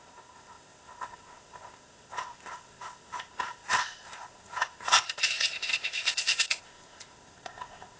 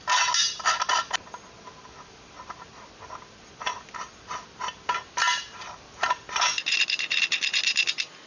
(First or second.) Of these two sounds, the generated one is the first